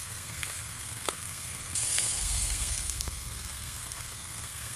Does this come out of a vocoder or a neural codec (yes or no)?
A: yes